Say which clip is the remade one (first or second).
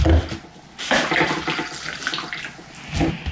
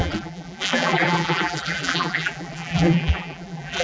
second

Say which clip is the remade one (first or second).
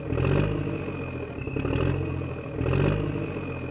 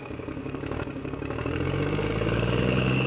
second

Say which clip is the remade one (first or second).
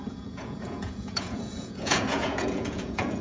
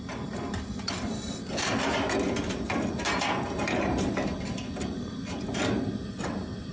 first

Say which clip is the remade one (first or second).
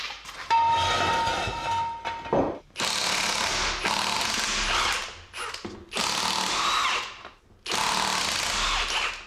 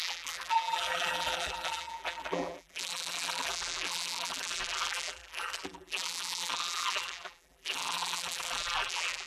second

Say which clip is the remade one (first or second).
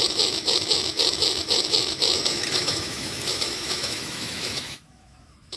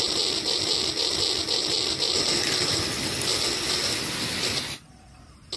first